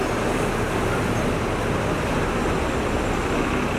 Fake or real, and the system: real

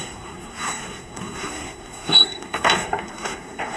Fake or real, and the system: fake, codec, SNAC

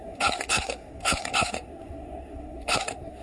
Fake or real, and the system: fake, codec, SNAC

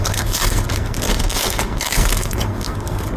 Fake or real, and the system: fake, codec, SNAC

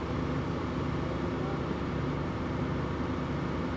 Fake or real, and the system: real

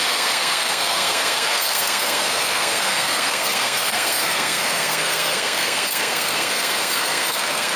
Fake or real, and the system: fake, codec, SNAC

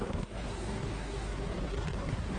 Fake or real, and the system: fake, codec, SNAC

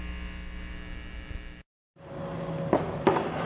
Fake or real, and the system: real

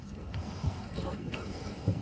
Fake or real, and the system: fake, codec, SNAC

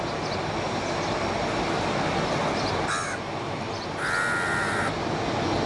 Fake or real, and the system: real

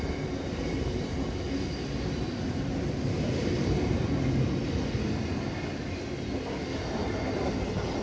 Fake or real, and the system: real